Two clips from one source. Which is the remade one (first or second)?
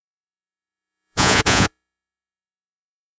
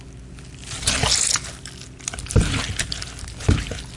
first